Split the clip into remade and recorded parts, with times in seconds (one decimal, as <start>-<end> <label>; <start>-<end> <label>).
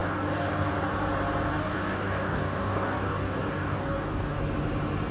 0.0-0.7 remade; 0.7-1.5 recorded; 1.5-4.4 remade; 4.4-5.1 recorded